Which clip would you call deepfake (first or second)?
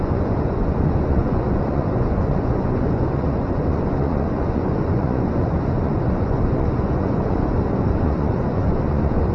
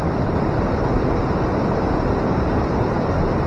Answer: first